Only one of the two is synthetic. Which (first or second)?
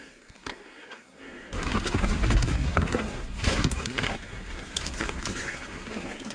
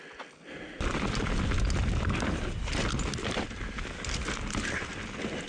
first